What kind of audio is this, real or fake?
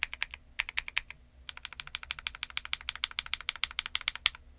real